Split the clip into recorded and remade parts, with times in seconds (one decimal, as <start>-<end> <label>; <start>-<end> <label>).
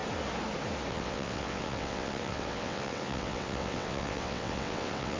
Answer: 0.0-0.9 recorded; 0.9-5.2 remade